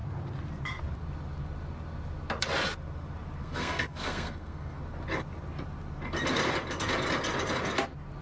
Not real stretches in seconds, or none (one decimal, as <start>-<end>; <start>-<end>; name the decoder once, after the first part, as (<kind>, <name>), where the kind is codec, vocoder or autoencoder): 3.4-4.8 (codec, SNAC)